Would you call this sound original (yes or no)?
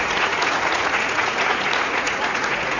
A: no